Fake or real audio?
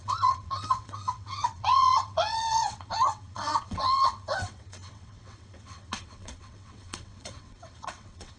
fake